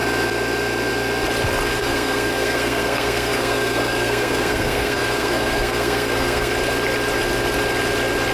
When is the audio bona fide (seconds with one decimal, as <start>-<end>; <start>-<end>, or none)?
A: 0.0-1.8; 6.5-8.3